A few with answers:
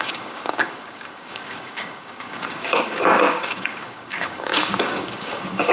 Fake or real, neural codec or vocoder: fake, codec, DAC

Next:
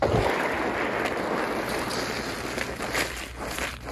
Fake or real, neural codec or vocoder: real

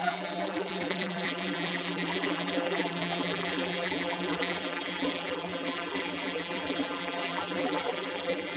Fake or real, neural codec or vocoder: fake, vocoder, BigVGAN v2